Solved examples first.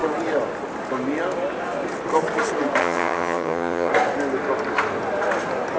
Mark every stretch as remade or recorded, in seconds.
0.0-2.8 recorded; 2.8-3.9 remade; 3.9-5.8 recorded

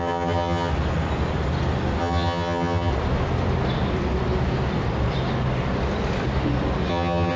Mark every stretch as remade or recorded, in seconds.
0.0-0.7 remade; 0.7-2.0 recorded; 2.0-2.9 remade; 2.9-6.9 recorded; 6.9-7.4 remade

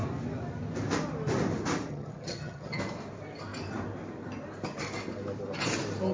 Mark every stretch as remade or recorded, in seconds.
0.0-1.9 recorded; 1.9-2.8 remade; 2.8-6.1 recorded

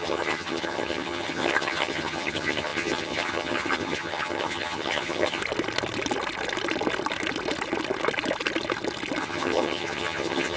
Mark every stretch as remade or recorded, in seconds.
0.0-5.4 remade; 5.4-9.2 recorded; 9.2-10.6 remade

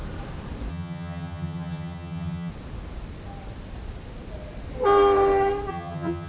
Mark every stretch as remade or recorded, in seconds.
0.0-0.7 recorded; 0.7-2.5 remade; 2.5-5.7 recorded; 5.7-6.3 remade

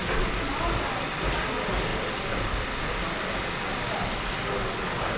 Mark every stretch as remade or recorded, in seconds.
0.0-5.2 recorded